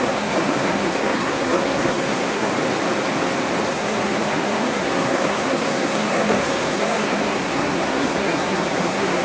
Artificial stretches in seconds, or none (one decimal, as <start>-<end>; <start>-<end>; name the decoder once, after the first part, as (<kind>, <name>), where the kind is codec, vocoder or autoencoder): 0.0-2.5 (codec, SNAC); 3.7-9.2